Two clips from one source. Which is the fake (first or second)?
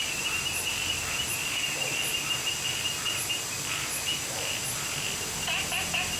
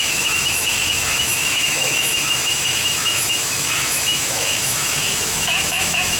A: second